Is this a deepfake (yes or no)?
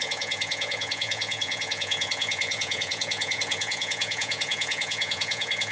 yes